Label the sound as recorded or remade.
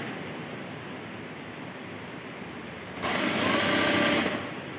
recorded